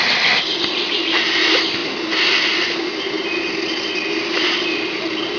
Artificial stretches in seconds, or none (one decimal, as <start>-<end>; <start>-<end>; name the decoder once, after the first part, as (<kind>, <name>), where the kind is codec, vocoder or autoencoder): none